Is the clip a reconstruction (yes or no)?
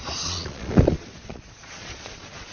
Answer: yes